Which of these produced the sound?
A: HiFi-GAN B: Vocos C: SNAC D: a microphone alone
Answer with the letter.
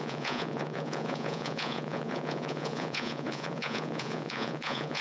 B